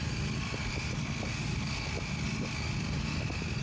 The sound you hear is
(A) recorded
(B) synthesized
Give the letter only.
A